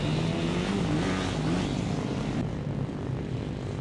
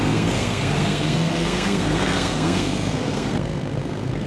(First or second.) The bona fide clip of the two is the first